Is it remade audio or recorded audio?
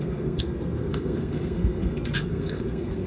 remade